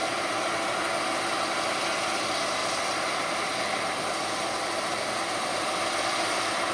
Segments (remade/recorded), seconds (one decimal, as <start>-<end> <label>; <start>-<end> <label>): 0.0-1.8 remade; 1.8-2.6 recorded; 2.6-6.7 remade